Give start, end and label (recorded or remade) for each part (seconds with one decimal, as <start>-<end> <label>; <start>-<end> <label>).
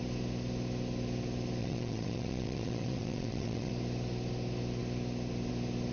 0.0-1.6 recorded; 1.6-3.7 remade; 3.7-5.9 recorded